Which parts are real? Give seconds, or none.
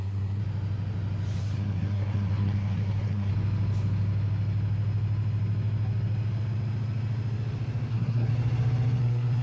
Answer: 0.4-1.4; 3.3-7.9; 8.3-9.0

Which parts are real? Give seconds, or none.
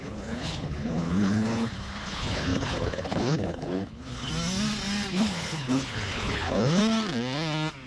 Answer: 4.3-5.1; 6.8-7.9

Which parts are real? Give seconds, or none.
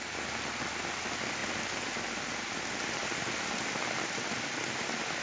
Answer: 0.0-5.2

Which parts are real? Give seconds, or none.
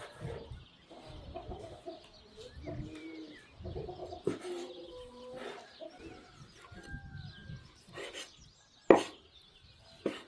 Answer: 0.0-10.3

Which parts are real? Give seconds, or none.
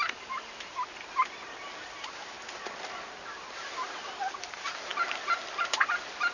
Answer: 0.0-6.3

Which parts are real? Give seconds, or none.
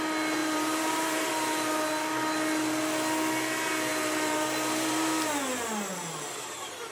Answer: 0.0-0.4; 1.3-3.9